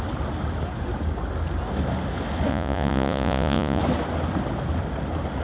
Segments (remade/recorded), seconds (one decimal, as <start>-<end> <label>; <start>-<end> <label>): 0.0-2.5 recorded; 2.5-3.8 remade; 3.8-5.4 recorded

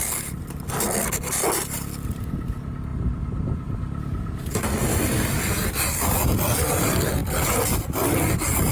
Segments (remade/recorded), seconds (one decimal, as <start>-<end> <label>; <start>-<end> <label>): 0.0-2.9 recorded; 2.9-4.0 remade; 4.0-8.7 recorded

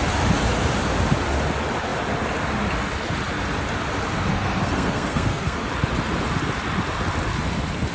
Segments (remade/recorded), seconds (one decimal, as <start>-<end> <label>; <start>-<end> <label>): 0.0-4.3 recorded; 4.3-5.7 remade; 5.7-7.9 recorded

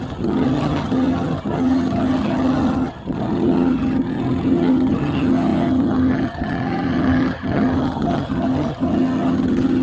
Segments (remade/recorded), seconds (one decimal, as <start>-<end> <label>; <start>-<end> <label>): 0.0-9.8 remade

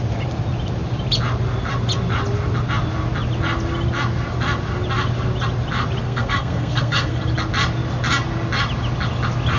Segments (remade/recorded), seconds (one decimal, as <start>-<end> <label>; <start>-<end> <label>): 0.0-6.0 recorded; 6.0-7.2 remade; 7.2-9.6 recorded

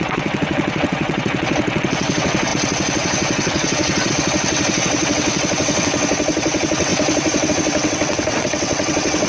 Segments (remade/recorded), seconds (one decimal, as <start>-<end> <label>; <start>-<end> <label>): 0.0-9.3 remade

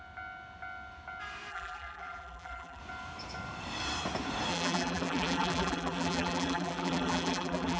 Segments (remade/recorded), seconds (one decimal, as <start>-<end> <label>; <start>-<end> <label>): 0.0-1.5 recorded; 1.5-2.8 remade; 2.8-4.5 recorded; 4.5-7.8 remade

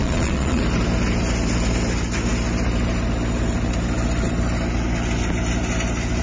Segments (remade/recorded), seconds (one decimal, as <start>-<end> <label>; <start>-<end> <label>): 0.0-0.6 remade; 0.6-6.2 recorded